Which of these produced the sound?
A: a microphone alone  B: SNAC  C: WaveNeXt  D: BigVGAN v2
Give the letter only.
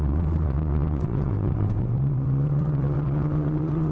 C